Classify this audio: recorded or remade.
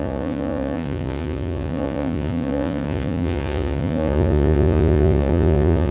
remade